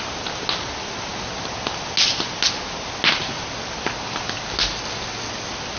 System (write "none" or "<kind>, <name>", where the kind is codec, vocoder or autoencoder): none